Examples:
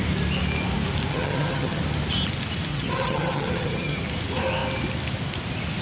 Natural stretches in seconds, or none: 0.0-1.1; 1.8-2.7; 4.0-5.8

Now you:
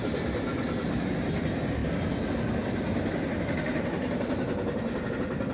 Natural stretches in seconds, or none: 0.0-5.5

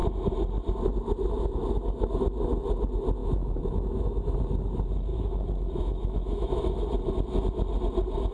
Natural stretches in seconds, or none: 0.0-3.2; 4.4-5.1; 6.6-8.3

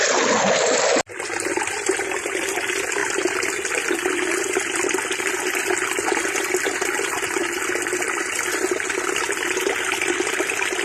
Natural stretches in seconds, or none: 0.0-10.8